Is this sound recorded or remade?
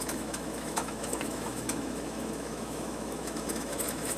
remade